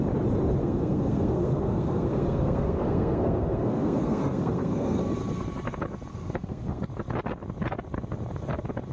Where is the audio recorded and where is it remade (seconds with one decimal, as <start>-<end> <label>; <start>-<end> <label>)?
0.0-0.6 recorded; 0.6-5.0 remade; 5.0-6.1 recorded; 6.1-6.8 remade; 6.8-8.9 recorded